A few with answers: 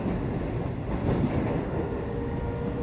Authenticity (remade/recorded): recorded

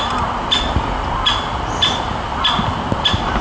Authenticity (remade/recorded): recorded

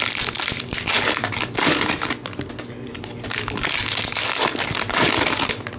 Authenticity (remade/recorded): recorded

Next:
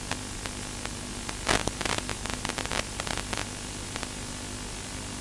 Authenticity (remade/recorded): recorded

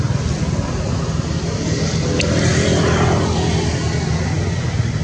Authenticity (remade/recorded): recorded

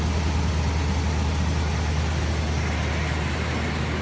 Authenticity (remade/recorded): recorded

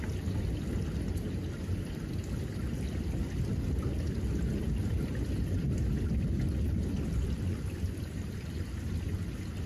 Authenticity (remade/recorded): recorded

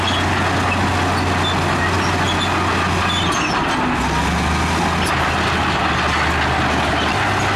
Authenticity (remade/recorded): recorded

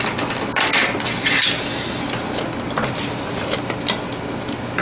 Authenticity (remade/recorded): recorded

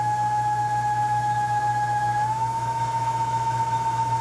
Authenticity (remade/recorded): remade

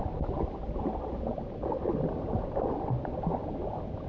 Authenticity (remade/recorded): recorded